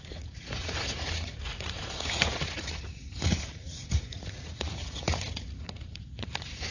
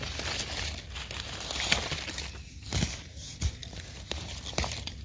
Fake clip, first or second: first